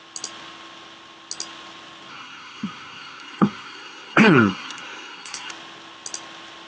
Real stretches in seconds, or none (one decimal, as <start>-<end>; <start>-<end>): 0.0-2.1; 5.5-6.7